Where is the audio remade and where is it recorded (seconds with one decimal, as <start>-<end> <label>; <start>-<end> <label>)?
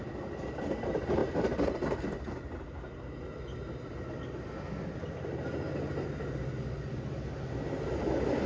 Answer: 0.0-8.5 recorded